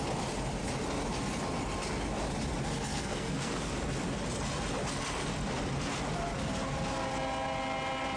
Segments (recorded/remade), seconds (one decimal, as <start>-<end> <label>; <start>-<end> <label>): 0.0-2.9 recorded; 2.9-3.7 remade; 3.7-8.2 recorded